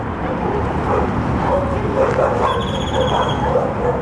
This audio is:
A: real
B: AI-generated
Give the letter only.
B